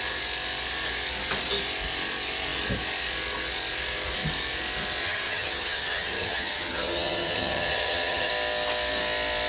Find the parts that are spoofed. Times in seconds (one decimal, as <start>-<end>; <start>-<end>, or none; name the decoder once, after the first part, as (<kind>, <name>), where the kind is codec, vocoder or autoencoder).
5.0-8.3 (vocoder, HiFi-GAN)